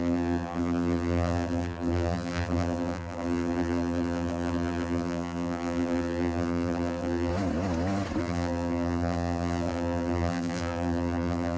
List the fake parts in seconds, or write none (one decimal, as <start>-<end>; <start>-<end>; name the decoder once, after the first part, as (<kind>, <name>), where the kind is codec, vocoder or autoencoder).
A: 0.0-7.3 (vocoder, BigVGAN v2); 8.2-11.6